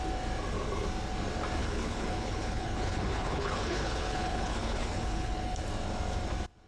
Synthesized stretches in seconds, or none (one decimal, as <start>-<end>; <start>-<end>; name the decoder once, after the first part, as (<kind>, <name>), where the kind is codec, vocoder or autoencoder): 1.6-5.6 (codec, HILCodec)